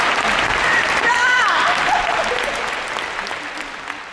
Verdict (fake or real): real